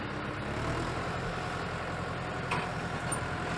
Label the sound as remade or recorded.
recorded